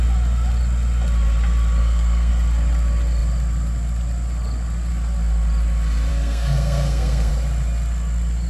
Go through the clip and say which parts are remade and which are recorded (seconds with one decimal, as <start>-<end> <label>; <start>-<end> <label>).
0.0-1.8 recorded; 1.8-2.3 remade; 2.3-6.1 recorded; 6.1-7.3 remade; 7.3-8.5 recorded